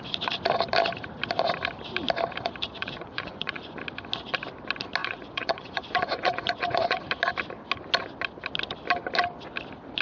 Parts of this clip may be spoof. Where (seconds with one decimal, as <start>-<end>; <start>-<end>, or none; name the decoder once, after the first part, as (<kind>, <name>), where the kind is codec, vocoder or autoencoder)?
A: 2.8-3.8 (vocoder, Vocos); 5.0-7.0